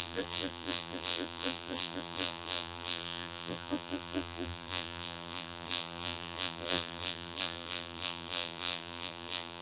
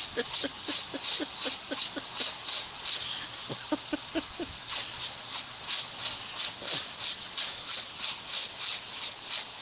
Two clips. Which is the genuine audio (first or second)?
second